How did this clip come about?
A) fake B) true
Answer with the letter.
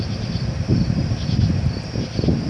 B